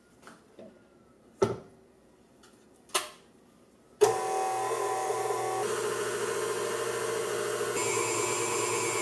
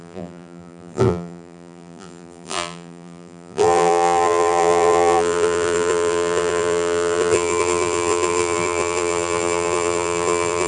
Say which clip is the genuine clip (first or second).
first